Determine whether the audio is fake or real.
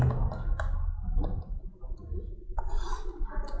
real